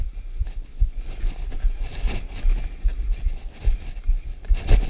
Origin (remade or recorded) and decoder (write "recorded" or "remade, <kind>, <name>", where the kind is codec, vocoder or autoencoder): recorded